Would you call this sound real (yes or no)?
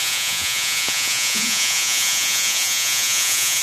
no